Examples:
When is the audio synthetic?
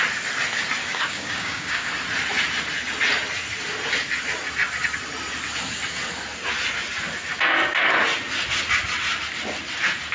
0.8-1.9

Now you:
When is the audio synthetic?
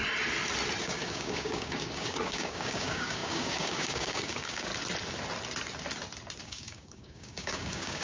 0.8-4.7; 6.4-8.0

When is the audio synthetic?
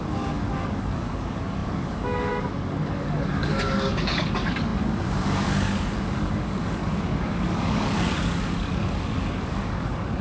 0.0-10.2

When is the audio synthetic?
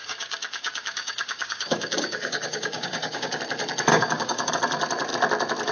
0.0-3.4; 3.9-4.5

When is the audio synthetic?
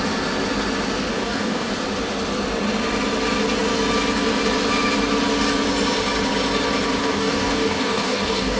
1.1-1.7; 7.0-8.6